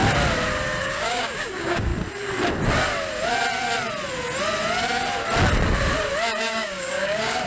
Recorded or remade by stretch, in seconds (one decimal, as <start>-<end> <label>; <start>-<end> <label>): 0.0-0.8 recorded; 0.8-1.9 remade; 1.9-6.4 recorded; 6.4-7.5 remade

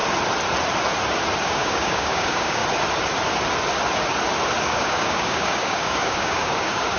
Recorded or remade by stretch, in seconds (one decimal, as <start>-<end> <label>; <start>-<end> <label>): 0.0-1.4 recorded; 1.4-2.6 remade; 2.6-4.6 recorded; 4.6-7.0 remade

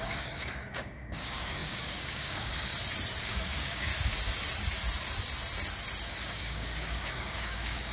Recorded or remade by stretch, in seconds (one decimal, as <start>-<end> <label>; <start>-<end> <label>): 0.0-2.7 remade; 2.7-3.2 recorded; 3.2-3.9 remade; 3.9-6.1 recorded; 6.1-7.9 remade

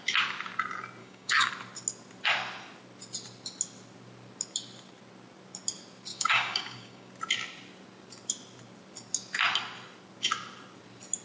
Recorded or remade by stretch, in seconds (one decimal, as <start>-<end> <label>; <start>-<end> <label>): 0.0-1.0 recorded; 1.0-1.5 remade; 1.5-6.1 recorded; 6.1-7.1 remade; 7.1-11.2 recorded

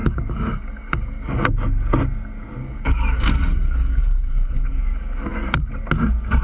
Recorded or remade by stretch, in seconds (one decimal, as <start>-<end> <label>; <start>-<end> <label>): 0.0-1.5 remade; 1.5-2.6 recorded; 2.6-5.7 remade; 5.7-6.4 recorded